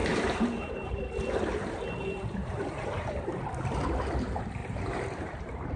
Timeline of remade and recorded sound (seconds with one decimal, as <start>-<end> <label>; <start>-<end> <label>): 0.0-1.0 remade; 1.0-2.4 recorded; 2.4-3.4 remade; 3.4-4.6 recorded; 4.6-5.8 remade